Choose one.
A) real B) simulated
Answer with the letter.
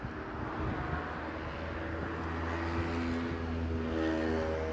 A